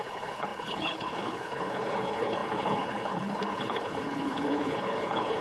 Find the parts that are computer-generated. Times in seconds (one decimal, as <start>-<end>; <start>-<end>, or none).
0.0-5.4